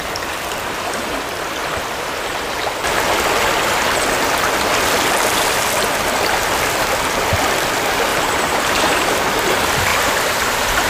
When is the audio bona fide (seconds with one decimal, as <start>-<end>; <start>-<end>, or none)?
0.0-8.1; 9.2-9.9